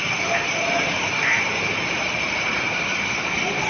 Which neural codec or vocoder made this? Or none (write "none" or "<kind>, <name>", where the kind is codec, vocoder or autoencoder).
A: vocoder, BigVGAN v2